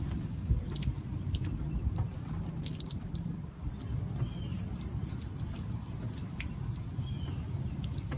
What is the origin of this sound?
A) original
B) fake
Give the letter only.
A